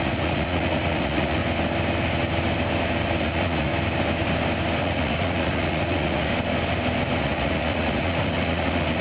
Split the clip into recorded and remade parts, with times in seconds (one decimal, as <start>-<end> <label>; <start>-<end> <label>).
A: 0.0-1.4 remade; 1.4-3.2 recorded; 3.2-3.7 remade; 3.7-4.8 recorded; 4.8-6.3 remade; 6.3-7.2 recorded; 7.2-9.0 remade